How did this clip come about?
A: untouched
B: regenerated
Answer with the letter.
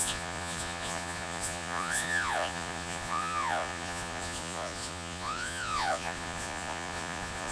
B